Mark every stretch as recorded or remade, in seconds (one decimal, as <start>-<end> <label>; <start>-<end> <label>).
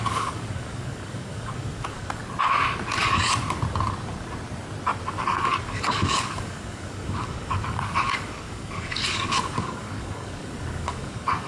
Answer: 0.0-2.2 remade; 2.2-5.1 recorded; 5.1-11.5 remade